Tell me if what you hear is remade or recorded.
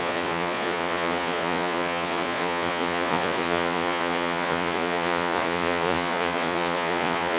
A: remade